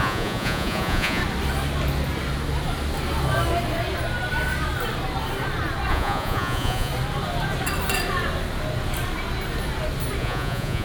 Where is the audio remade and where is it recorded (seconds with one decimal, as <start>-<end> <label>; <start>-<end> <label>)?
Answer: 0.0-1.2 remade; 1.2-5.9 recorded; 5.9-6.9 remade; 6.9-10.2 recorded; 10.2-10.8 remade